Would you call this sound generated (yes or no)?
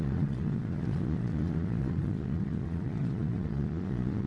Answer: yes